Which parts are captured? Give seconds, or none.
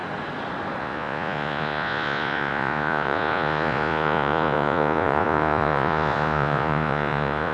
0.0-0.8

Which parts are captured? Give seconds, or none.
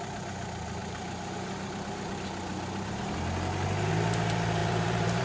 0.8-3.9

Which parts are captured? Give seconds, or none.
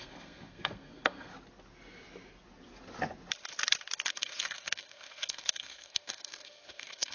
1.3-4.1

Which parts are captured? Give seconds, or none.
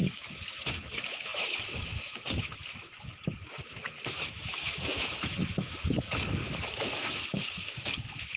none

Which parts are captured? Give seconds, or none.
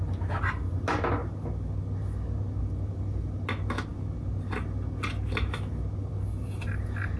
0.0-7.2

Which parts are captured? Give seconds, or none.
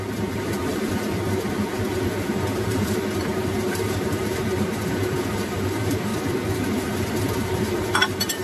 0.9-2.1; 6.1-6.8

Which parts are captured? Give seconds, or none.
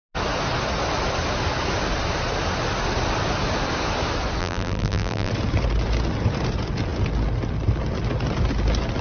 0.0-4.4; 5.3-9.0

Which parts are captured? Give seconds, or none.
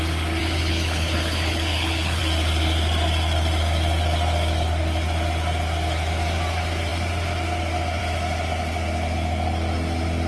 0.0-0.4; 2.2-10.3